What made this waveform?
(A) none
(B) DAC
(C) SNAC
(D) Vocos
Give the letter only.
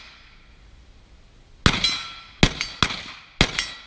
A